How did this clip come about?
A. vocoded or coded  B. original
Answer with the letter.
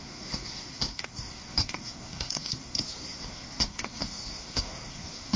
A